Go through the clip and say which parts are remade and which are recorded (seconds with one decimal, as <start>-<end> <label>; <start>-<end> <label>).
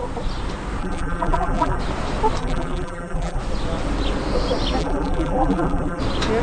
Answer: 0.0-0.8 recorded; 0.8-1.8 remade; 1.8-2.4 recorded; 2.4-3.4 remade; 3.4-4.8 recorded; 4.8-6.0 remade; 6.0-6.4 recorded